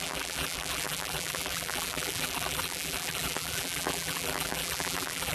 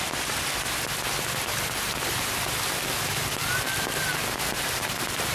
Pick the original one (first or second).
second